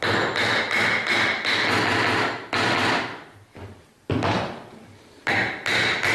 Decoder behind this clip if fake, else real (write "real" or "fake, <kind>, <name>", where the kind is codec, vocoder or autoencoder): real